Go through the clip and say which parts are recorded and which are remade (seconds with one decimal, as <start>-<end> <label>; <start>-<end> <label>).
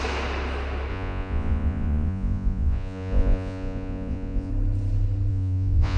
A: 0.0-0.9 recorded; 0.9-4.5 remade; 4.5-5.3 recorded; 5.3-6.0 remade